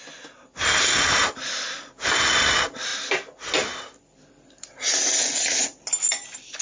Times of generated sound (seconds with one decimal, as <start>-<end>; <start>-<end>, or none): none